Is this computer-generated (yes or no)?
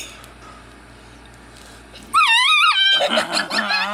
no